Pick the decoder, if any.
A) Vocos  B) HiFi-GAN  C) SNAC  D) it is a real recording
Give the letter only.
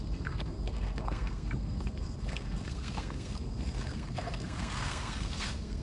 C